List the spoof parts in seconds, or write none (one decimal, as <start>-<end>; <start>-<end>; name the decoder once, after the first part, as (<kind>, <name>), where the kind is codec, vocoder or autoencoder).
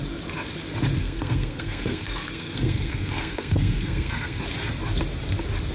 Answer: 1.0-4.4 (codec, SNAC)